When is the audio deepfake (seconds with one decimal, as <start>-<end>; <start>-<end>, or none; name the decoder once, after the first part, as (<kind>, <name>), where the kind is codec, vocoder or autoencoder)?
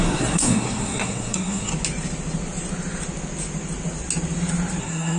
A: 0.0-1.7 (codec, SNAC); 4.8-5.2